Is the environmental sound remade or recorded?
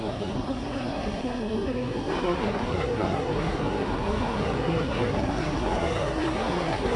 remade